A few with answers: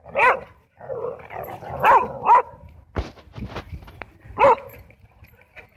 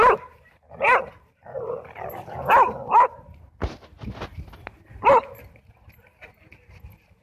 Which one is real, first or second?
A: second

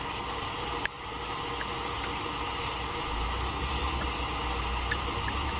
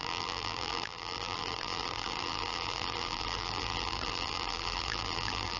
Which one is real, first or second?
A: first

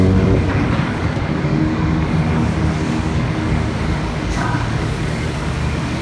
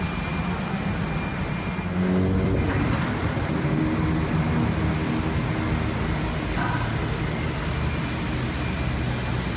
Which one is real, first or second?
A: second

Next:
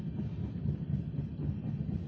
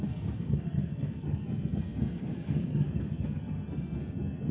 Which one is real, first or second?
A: first